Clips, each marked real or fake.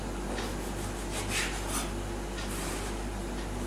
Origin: real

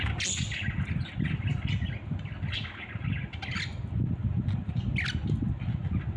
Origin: real